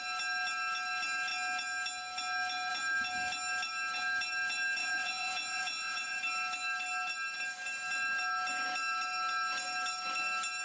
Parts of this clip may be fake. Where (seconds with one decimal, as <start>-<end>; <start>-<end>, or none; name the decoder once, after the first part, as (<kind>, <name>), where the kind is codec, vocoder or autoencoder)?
4.8-6.2 (vocoder, Vocos)